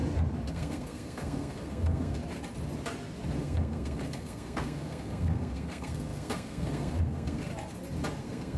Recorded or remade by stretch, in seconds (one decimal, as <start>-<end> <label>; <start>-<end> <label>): 0.0-0.5 recorded; 0.5-2.2 remade; 2.2-3.4 recorded; 3.4-7.5 remade; 7.5-8.2 recorded; 8.2-8.6 remade